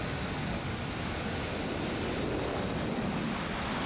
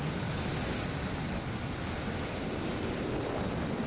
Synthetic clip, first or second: second